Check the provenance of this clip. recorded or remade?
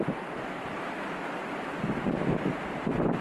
recorded